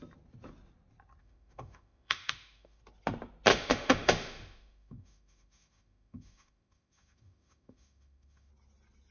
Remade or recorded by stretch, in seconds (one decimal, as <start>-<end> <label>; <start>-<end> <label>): 0.0-1.2 recorded; 1.2-2.8 remade; 2.8-3.5 recorded; 3.5-8.5 remade; 8.5-9.1 recorded